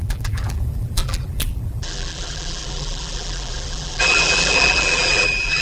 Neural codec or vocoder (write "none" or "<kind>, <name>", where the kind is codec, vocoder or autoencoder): vocoder, BigVGAN v2